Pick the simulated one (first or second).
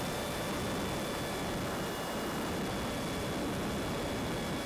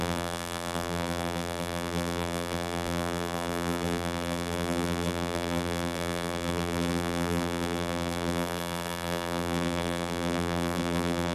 second